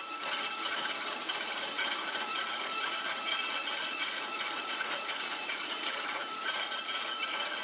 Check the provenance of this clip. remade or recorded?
remade